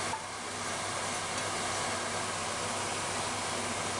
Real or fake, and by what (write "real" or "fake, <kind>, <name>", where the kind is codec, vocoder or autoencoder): real